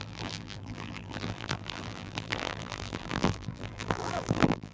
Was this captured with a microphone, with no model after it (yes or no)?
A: no